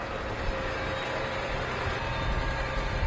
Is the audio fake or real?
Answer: real